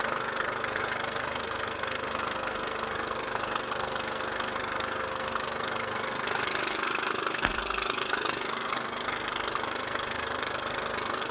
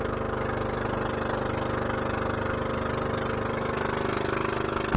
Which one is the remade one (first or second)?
first